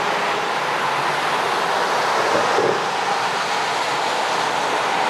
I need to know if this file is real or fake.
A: real